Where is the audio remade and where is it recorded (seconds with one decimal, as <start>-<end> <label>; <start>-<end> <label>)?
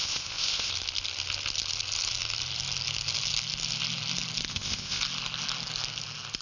0.0-0.7 remade; 0.7-4.5 recorded; 4.5-5.0 remade; 5.0-6.4 recorded